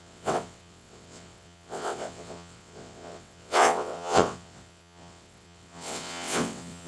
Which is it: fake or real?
fake